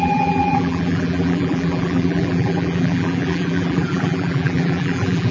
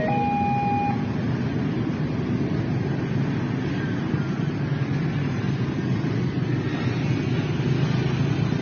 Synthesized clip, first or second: first